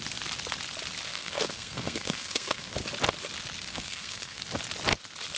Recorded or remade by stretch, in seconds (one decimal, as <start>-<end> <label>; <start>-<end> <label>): 0.0-1.1 recorded; 1.1-2.7 remade; 2.7-3.7 recorded; 3.7-4.4 remade; 4.4-5.4 recorded